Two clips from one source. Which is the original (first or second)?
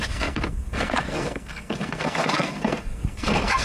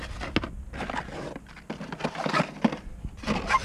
second